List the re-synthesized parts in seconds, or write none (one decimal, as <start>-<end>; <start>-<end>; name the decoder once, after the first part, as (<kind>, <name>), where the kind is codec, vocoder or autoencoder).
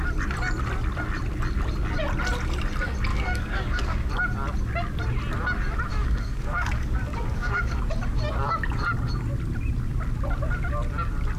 3.1-4.1 (codec, DAC); 5.9-7.8